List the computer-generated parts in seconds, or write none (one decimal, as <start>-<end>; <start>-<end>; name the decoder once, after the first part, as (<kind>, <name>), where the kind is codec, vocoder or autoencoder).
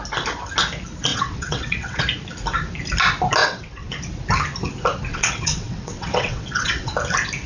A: 1.1-2.0 (vocoder, WaveNeXt); 3.4-3.9; 5.1-6.9